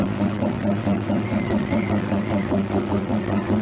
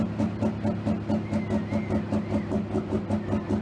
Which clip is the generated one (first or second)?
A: first